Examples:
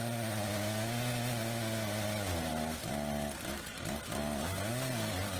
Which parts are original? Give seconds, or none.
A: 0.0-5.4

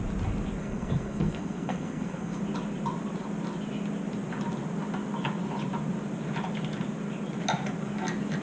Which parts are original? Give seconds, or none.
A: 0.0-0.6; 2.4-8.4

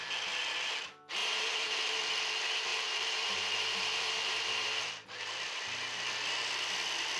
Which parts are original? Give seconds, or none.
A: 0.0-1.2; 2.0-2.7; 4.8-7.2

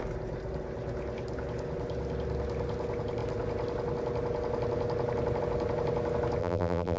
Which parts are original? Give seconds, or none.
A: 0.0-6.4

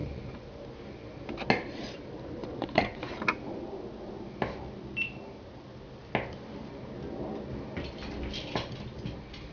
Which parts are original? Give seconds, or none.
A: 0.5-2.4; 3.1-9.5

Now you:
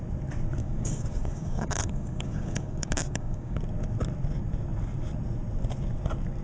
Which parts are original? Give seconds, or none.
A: 0.0-0.6; 3.6-6.4

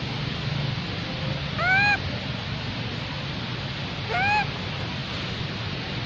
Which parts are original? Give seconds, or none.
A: 0.0-6.1